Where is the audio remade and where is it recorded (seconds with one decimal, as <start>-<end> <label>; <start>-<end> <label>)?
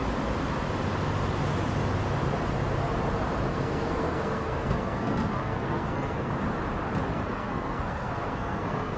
0.0-3.5 recorded; 3.5-6.3 remade; 6.3-7.1 recorded; 7.1-9.0 remade